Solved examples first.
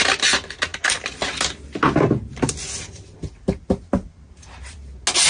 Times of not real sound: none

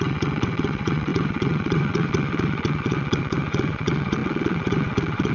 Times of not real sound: 0.0-5.3 (vocoder, WaveNeXt)

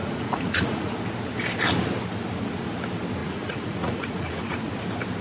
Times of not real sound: 0.0-0.9 (vocoder, Vocos); 3.2-4.8

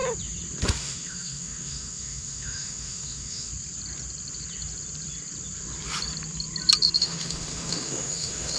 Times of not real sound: 0.8-3.5 (autoencoder, DAC-VAE); 7.0-8.6